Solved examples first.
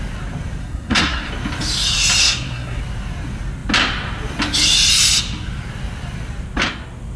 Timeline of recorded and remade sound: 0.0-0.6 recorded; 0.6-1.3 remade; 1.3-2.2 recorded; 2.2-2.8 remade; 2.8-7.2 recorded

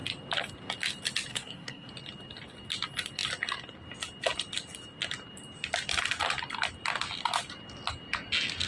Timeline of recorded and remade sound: 0.0-1.3 recorded; 1.3-1.9 remade; 1.9-8.7 recorded

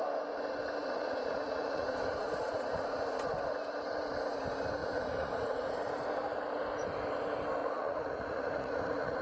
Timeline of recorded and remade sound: 0.0-0.8 recorded; 0.8-3.3 remade; 3.3-4.8 recorded; 4.8-5.7 remade; 5.7-7.6 recorded; 7.6-9.2 remade